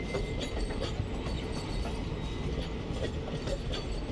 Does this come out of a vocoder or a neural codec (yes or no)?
no